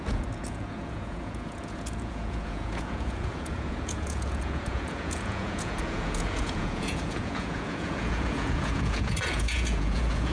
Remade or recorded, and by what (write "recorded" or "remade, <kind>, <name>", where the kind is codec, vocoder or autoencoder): remade, vocoder, Vocos